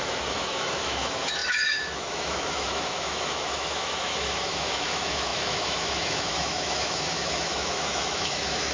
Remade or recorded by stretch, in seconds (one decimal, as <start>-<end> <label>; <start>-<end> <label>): 0.0-8.7 remade